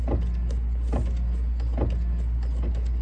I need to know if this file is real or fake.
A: real